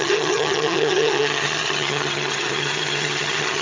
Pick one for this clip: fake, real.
fake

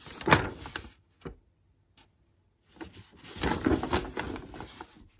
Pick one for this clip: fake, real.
real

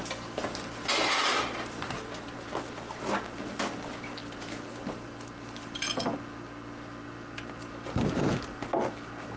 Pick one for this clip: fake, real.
real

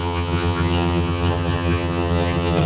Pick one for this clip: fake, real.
fake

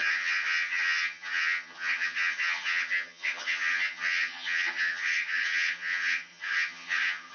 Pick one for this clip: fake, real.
fake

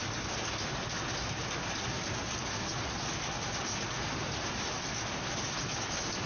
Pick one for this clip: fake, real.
real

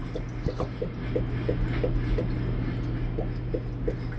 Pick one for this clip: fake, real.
real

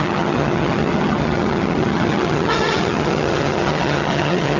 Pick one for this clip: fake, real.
fake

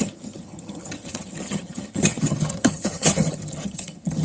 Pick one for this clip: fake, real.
fake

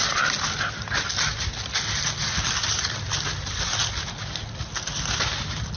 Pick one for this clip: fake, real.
real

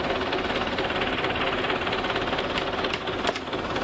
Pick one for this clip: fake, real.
real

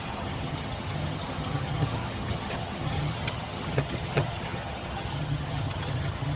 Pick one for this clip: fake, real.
fake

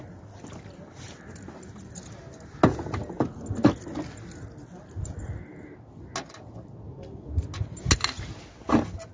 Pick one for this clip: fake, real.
real